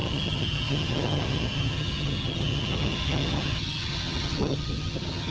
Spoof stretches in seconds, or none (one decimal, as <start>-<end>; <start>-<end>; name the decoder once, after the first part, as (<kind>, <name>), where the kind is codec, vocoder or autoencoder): 0.0-5.3 (vocoder, HiFi-GAN)